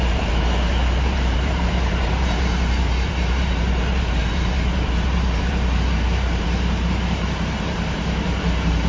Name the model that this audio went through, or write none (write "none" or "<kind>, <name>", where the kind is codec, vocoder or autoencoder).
vocoder, BigVGAN v2